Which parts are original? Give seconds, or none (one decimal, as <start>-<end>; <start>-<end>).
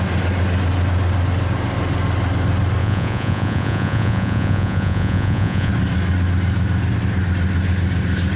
0.0-2.8; 5.7-8.4